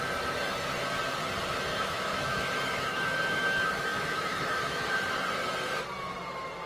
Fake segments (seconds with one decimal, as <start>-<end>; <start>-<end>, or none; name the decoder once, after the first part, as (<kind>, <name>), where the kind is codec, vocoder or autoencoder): 1.7-4.9 (autoencoder, DAC-VAE)